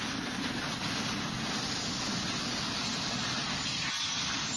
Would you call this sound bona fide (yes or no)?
yes